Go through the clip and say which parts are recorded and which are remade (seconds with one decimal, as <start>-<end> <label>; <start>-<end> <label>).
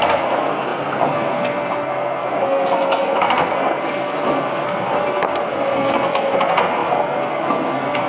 0.0-8.1 remade